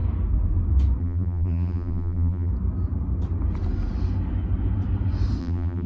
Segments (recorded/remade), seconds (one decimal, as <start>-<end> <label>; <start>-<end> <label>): 0.0-1.0 recorded; 1.0-2.5 remade; 2.5-5.4 recorded; 5.4-5.9 remade